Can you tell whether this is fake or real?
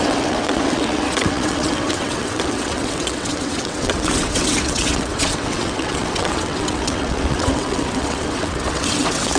fake